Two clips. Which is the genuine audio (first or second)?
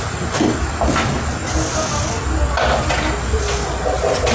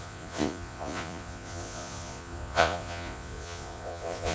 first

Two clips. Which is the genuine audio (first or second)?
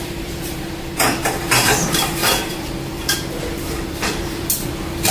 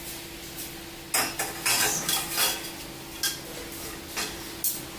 second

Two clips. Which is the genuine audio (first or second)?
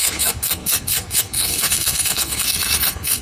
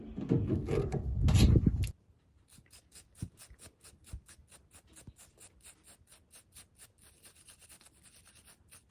second